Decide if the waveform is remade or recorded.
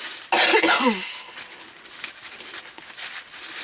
recorded